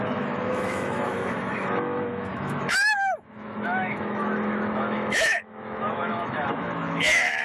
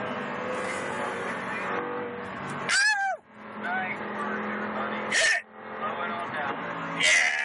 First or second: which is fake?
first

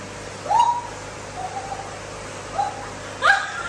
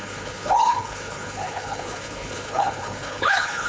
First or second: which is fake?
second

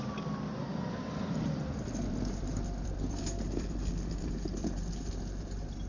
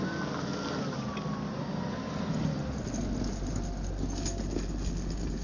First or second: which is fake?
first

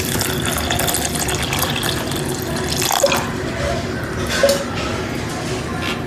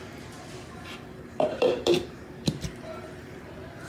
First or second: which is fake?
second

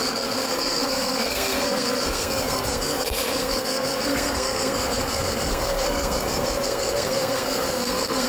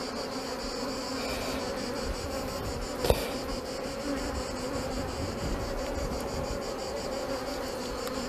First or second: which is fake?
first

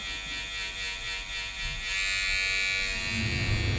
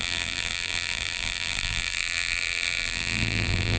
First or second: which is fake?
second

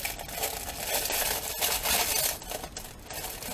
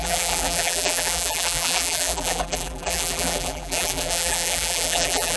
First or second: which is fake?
second